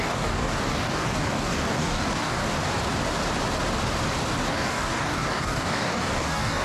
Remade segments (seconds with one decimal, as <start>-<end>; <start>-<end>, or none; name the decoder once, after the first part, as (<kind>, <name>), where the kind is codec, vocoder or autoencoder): 0.0-2.4 (codec, DAC); 4.5-6.6